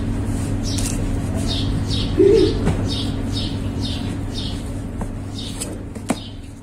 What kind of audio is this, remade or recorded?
recorded